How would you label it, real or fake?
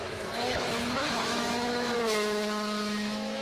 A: fake